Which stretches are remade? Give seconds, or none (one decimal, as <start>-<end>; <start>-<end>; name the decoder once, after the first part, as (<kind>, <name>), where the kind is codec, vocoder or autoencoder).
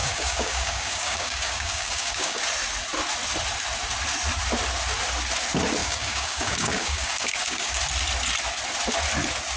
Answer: 0.0-2.4 (codec, DAC); 5.8-7.8